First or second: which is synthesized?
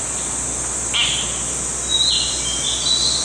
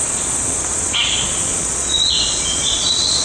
second